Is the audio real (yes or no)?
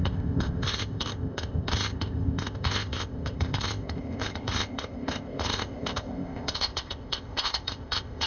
no